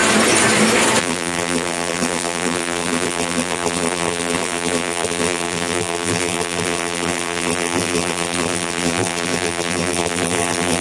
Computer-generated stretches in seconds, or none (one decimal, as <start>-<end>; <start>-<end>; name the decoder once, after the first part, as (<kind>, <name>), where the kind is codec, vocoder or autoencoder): 1.0-10.8 (vocoder, BigVGAN v2)